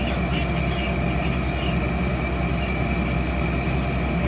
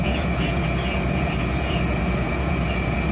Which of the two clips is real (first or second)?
first